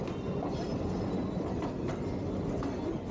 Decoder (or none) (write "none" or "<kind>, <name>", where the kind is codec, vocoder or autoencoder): none